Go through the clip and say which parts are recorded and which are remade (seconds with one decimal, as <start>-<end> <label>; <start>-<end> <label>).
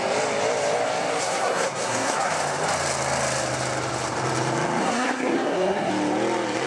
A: 0.0-1.2 recorded; 1.2-2.3 remade; 2.3-4.8 recorded; 4.8-5.9 remade; 5.9-6.7 recorded